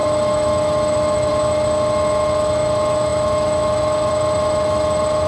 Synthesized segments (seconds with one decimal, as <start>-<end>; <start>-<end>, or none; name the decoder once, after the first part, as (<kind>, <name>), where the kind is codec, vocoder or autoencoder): 0.0-5.3 (autoencoder, DAC-VAE)